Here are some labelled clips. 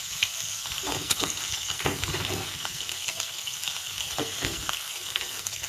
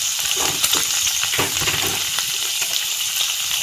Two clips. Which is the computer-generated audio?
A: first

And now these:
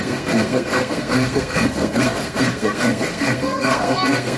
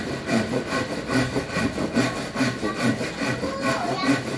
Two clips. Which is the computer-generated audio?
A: first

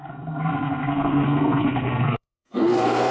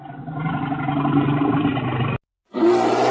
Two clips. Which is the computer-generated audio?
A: first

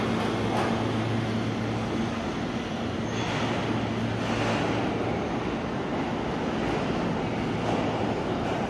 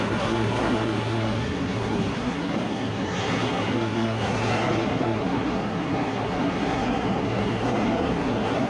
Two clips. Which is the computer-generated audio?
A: second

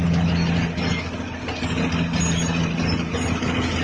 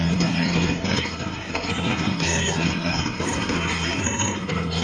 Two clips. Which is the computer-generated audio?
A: second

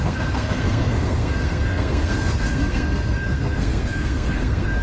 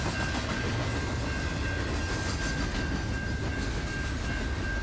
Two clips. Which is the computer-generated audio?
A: first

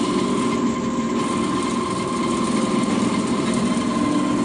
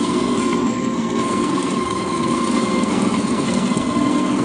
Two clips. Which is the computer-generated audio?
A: second